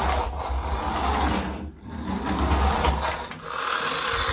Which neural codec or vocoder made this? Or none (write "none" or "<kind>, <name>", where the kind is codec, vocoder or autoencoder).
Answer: none